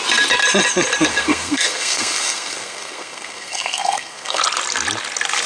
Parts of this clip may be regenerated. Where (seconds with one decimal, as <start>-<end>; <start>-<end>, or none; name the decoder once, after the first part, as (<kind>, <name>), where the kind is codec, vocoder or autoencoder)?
1.1-4.4 (codec, SNAC)